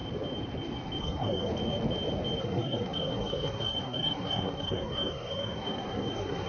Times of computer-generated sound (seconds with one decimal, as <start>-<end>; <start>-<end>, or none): 1.0-1.5; 2.4-6.5